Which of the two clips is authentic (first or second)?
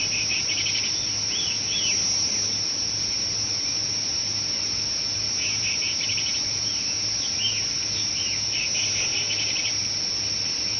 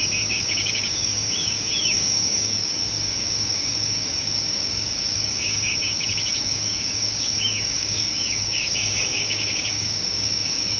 first